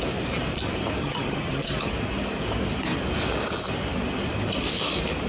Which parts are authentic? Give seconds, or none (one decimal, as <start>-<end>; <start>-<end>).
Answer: 0.0-1.0; 1.9-5.3